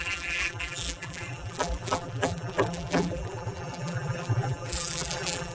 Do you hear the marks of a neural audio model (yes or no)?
yes